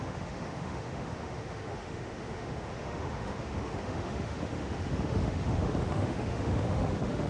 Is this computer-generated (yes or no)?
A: yes